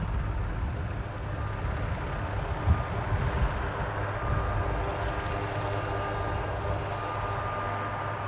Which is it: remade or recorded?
recorded